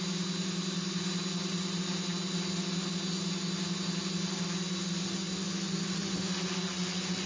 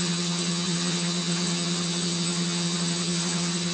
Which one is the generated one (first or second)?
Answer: second